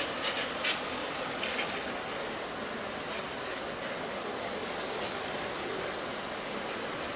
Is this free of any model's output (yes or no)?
yes